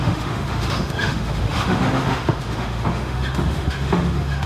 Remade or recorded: remade